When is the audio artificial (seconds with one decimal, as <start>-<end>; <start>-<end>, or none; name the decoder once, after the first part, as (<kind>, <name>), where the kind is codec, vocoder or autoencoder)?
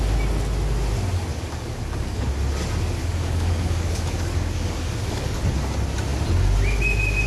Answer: 1.3-2.3 (codec, DAC); 3.0-5.4